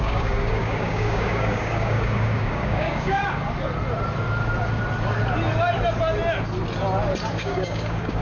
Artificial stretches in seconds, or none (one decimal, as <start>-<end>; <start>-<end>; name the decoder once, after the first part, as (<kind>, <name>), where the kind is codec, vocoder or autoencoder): 0.0-3.2 (codec, DAC); 7.3-8.2